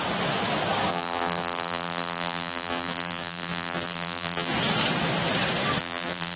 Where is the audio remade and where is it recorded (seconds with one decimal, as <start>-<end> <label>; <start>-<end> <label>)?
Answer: 0.0-0.9 recorded; 0.9-4.5 remade; 4.5-5.8 recorded; 5.8-6.4 remade